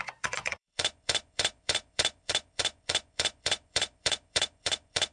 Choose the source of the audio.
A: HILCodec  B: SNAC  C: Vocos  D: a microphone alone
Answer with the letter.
C